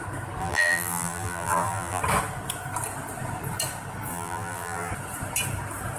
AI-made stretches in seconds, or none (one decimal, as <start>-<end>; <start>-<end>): 0.4-2.0; 4.1-4.9